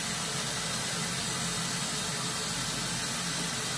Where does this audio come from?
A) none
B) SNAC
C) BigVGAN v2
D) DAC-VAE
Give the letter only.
A